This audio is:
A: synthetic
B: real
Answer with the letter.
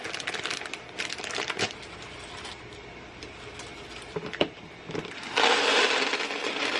B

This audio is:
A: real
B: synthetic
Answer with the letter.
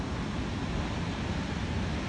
A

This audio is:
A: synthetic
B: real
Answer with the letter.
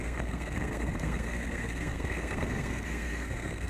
A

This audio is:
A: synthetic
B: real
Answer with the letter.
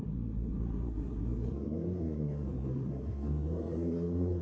A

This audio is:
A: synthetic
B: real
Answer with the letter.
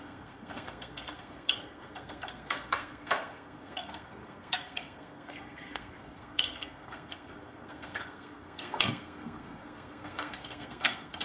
A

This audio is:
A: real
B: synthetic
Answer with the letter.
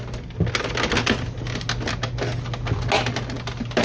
A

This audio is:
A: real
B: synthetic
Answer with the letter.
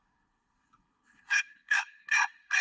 B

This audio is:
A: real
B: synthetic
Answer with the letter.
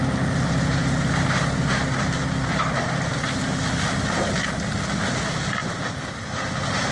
A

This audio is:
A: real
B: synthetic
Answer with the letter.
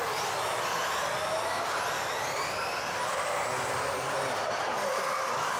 A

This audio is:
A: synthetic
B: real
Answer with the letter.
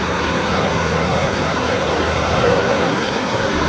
A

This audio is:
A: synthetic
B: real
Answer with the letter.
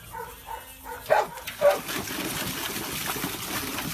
B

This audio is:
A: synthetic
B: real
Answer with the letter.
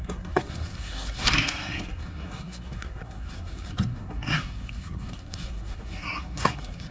A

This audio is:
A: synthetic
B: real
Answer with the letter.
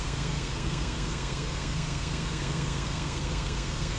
A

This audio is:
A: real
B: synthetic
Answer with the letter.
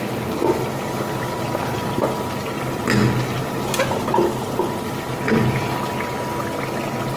A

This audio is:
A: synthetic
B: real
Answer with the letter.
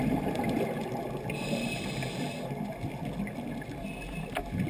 B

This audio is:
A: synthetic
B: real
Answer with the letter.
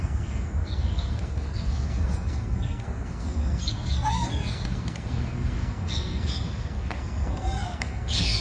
A